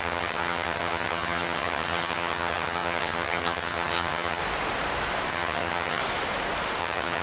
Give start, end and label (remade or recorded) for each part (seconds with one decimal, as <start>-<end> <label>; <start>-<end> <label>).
0.0-4.4 remade; 4.4-5.3 recorded; 5.3-6.0 remade; 6.0-6.8 recorded; 6.8-7.2 remade